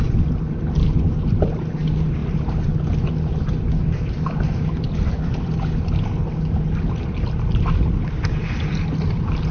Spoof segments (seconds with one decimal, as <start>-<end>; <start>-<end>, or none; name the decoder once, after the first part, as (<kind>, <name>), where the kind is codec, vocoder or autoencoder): none